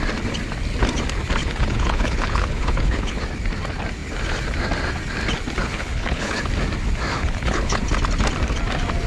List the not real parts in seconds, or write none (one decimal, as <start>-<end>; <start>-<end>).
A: 1.4-3.2; 5.6-6.4; 7.1-7.8